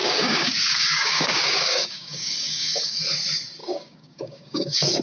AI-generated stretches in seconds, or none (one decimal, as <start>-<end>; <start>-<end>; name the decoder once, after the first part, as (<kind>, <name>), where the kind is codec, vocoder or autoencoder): 0.0-3.0 (codec, DAC); 3.6-5.0